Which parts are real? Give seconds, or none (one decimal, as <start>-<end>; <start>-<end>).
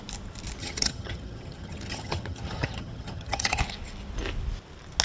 0.0-0.6; 3.6-5.0